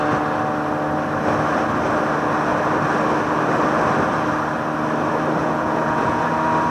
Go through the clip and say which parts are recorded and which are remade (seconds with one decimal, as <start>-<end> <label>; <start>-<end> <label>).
0.0-5.4 recorded; 5.4-6.3 remade; 6.3-6.7 recorded

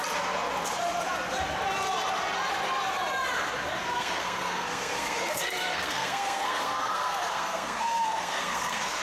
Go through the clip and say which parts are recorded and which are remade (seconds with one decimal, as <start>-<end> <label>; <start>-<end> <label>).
0.0-3.9 recorded; 3.9-9.0 remade

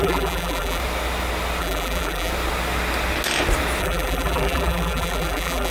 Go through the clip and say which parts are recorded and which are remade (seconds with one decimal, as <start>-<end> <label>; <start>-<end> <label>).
0.0-0.8 remade; 0.8-1.6 recorded; 1.6-2.3 remade; 2.3-3.8 recorded; 3.8-5.7 remade

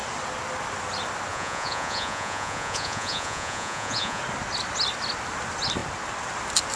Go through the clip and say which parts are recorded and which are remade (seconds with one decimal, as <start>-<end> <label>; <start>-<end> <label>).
0.0-1.3 recorded; 1.3-4.2 remade; 4.2-6.8 recorded

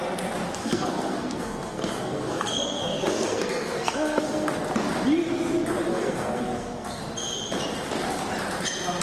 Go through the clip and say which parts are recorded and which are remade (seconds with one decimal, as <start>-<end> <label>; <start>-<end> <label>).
0.0-0.6 recorded; 0.6-4.5 remade; 4.5-5.9 recorded; 5.9-7.0 remade; 7.0-9.0 recorded